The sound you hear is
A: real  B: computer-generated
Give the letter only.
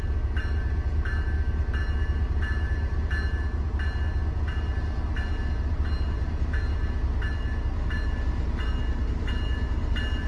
A